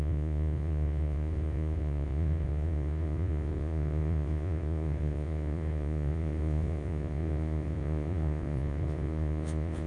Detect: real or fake fake